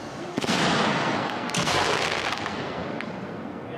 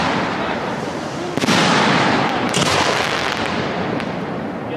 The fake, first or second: first